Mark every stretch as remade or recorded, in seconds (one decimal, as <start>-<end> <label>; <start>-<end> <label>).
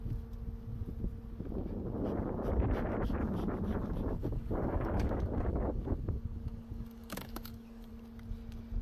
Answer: 0.0-4.2 recorded; 4.2-7.9 remade; 7.9-8.8 recorded